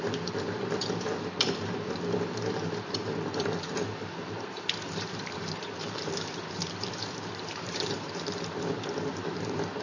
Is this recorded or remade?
remade